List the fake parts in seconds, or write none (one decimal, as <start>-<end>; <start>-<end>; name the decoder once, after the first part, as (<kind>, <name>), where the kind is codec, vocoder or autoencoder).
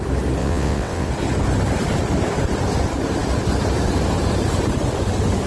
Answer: 0.4-1.1 (vocoder, WaveNeXt)